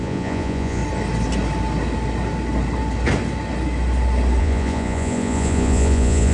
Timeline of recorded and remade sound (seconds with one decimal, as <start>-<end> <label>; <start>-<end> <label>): 0.0-0.8 remade; 0.8-4.4 recorded; 4.4-6.3 remade